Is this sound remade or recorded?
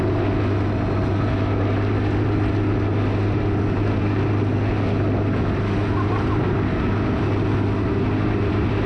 recorded